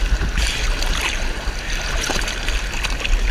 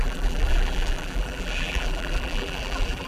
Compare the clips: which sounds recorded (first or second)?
first